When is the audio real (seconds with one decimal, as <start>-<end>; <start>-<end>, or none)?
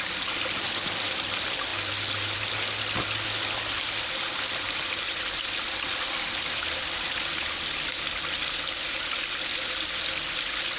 0.0-10.8